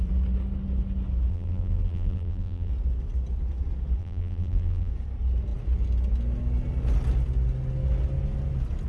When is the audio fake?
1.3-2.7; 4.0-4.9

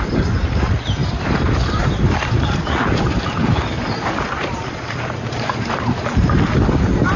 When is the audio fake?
0.0-7.2